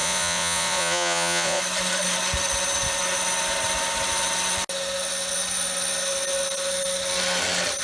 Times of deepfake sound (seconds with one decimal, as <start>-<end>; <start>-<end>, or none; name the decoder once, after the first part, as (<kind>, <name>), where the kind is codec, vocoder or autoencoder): 0.0-1.6 (vocoder, Vocos)